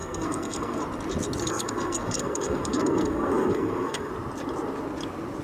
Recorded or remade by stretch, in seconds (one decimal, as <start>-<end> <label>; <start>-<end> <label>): 0.0-0.8 remade; 0.8-1.4 recorded; 1.4-4.1 remade; 4.1-5.4 recorded